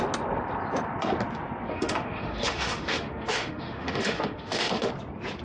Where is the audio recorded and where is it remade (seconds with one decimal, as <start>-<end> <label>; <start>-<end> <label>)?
0.0-1.7 recorded; 1.7-4.9 remade; 4.9-5.4 recorded